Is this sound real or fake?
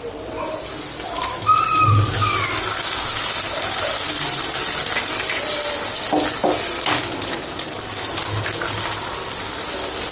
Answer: real